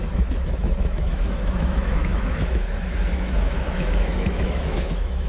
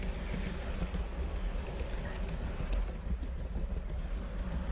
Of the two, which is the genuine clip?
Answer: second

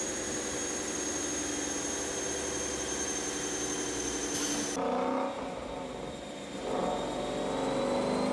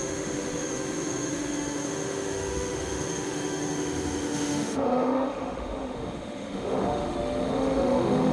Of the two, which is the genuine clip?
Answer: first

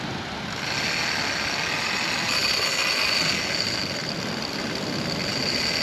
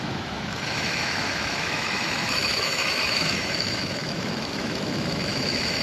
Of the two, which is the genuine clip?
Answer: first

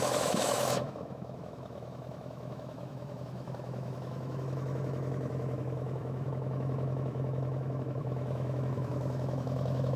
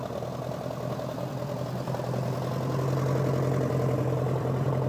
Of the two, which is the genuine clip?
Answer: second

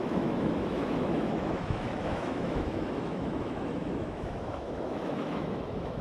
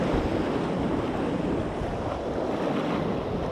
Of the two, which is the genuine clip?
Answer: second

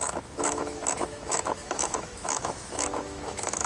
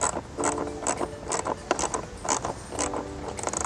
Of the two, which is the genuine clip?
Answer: second